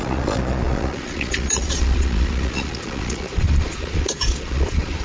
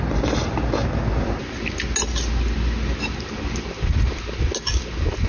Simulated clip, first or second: first